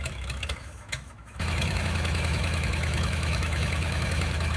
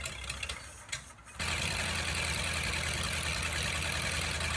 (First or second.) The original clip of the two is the second